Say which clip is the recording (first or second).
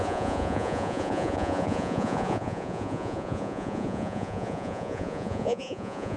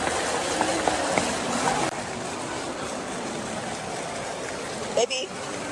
second